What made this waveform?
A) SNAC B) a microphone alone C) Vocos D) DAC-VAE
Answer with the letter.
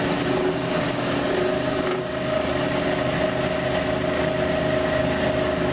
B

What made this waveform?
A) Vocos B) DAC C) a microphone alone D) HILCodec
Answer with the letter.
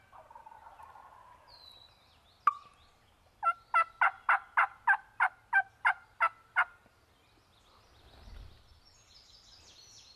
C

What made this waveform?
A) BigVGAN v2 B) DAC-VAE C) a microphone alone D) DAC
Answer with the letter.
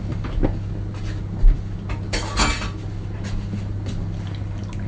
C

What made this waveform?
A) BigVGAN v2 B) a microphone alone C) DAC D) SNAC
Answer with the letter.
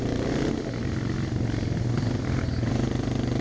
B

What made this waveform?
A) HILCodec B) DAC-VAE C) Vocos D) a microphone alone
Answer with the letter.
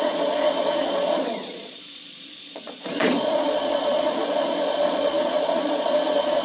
C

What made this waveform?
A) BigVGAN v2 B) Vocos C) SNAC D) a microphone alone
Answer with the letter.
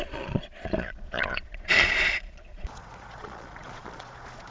B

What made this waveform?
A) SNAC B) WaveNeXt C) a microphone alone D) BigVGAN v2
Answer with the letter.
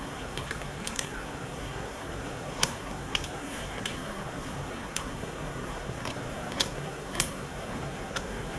A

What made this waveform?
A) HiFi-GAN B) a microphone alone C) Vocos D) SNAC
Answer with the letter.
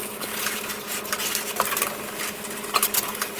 B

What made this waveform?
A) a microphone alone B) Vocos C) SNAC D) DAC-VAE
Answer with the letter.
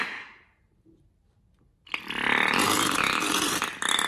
A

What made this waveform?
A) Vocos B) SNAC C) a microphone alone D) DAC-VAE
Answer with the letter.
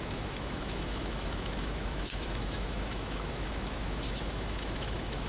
D